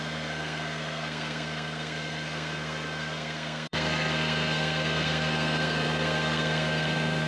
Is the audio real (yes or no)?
no